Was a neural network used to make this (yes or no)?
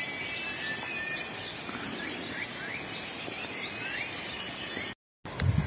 no